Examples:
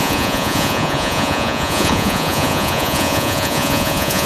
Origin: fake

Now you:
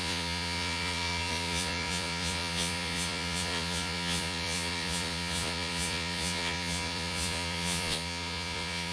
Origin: fake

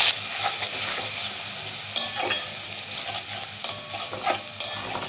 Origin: real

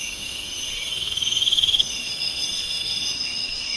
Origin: fake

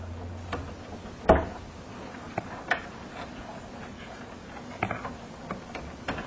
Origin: real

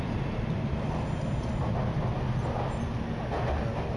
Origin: real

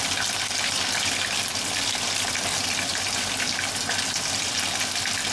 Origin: real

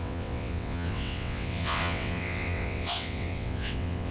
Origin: fake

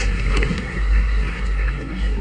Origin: fake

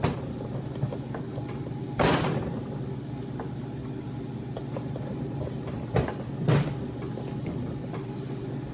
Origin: real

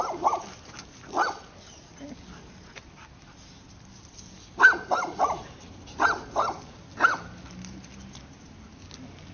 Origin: real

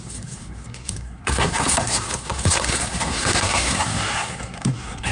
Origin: fake